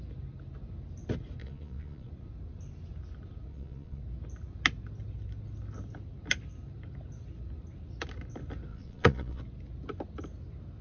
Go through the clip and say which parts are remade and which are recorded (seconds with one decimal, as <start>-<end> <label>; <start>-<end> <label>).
0.0-1.4 recorded; 1.4-2.1 remade; 2.1-3.5 recorded; 3.5-4.0 remade; 4.0-8.7 recorded; 8.7-9.4 remade; 9.4-10.8 recorded